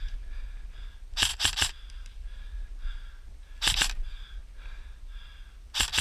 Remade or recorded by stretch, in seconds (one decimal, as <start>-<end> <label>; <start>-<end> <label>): 0.0-1.3 recorded; 1.3-2.4 remade; 2.4-6.0 recorded